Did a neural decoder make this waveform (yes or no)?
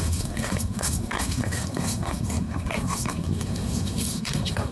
yes